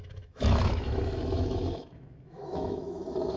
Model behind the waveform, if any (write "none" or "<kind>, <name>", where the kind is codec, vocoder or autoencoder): autoencoder, DAC-VAE